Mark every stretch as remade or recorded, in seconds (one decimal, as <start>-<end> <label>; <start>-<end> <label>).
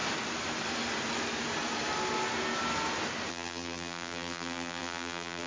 0.0-3.3 recorded; 3.3-5.5 remade